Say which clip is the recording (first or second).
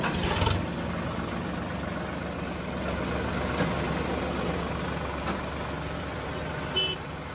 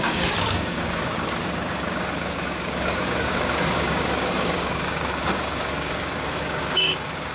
first